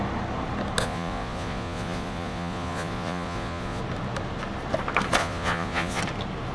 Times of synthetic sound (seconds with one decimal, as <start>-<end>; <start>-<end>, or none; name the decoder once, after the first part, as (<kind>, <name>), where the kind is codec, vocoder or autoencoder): 0.8-3.8 (vocoder, Vocos); 5.2-6.0